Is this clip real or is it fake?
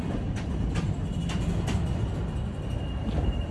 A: real